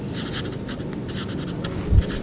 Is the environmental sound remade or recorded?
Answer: recorded